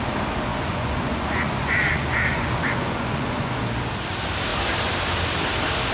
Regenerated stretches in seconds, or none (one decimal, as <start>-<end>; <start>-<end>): 0.5-3.6